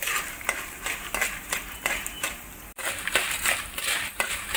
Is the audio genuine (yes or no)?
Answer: no